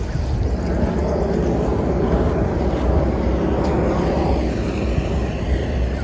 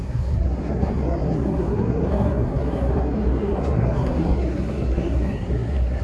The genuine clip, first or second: first